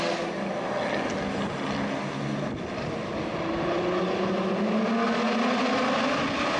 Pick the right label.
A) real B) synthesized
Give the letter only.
A